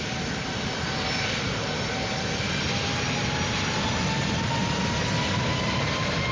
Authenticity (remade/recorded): recorded